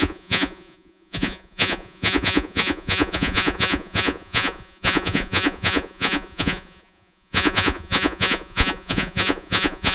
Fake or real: fake